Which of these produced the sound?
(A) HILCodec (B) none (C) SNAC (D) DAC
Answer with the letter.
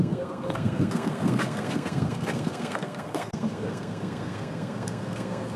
C